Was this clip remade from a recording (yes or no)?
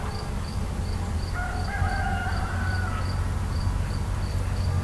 no